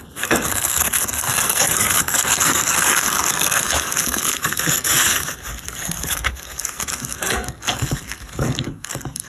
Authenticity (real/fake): fake